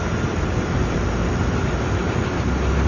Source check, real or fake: real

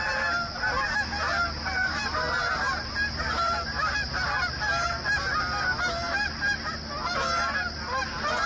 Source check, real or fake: real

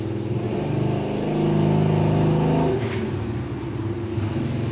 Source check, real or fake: real